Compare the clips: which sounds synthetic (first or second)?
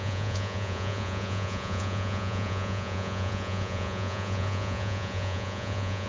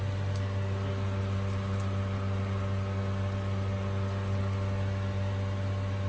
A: first